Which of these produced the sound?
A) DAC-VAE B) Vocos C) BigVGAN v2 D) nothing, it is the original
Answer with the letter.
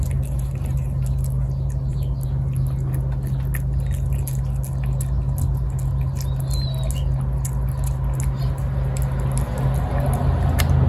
D